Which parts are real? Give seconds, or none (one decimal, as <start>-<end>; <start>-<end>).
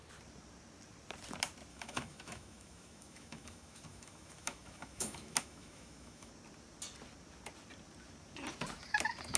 0.0-1.7; 6.3-9.4